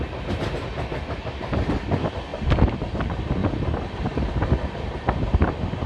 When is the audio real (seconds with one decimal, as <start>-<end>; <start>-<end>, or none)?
0.0-2.3; 2.9-3.4; 4.2-5.9